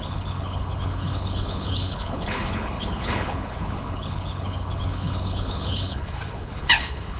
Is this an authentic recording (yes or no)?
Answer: no